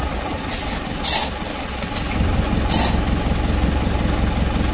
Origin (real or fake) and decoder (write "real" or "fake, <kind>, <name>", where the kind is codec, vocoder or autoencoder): real